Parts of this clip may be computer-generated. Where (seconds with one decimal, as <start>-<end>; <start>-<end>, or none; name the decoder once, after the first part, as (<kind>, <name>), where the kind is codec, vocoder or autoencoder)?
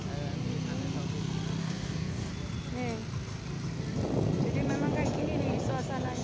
1.6-2.3 (codec, DAC)